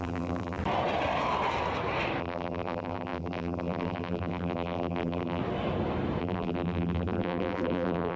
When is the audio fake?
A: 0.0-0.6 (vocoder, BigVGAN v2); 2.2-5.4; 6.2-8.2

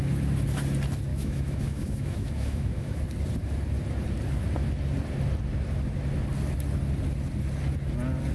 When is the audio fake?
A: 1.1-3.0 (autoencoder, DAC-VAE)

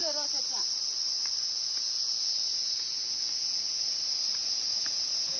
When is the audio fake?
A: 1.4-4.0 (vocoder, Vocos); 4.4-5.4

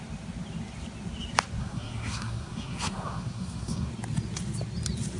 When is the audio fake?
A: 1.6-3.9 (codec, SNAC)

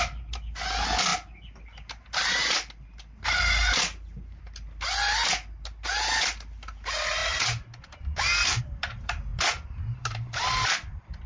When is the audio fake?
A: none

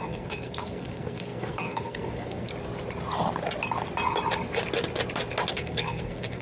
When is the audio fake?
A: 0.0-2.5 (codec, SNAC); 5.5-6.4

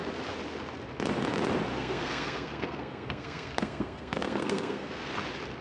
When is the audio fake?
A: 1.7-5.1 (codec, SNAC)

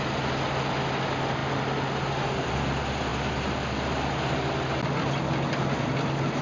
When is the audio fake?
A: none